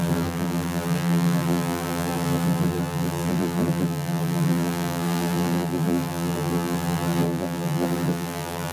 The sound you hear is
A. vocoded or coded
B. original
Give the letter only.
A